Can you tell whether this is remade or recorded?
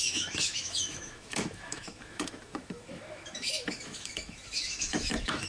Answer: remade